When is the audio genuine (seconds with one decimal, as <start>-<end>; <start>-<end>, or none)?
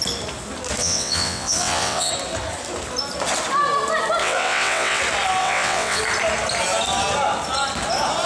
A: 0.0-0.8; 2.1-4.2; 5.0-5.4; 6.0-8.3